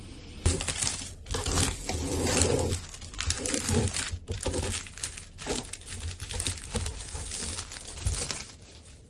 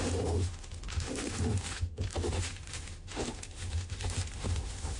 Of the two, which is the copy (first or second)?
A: second